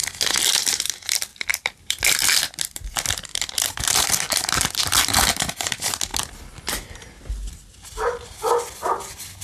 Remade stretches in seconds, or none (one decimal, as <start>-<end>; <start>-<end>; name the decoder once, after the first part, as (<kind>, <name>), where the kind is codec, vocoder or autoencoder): 1.3-2.0 (vocoder, BigVGAN v2); 3.3-4.5